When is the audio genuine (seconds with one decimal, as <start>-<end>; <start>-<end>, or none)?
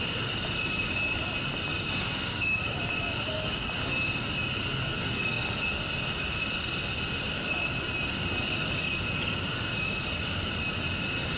0.0-2.1; 2.8-3.3; 3.8-11.4